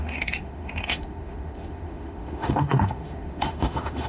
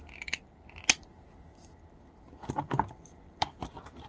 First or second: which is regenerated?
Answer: first